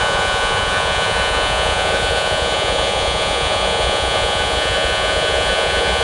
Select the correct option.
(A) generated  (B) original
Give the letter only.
A